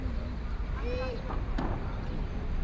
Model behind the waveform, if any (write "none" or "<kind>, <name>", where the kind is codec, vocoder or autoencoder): none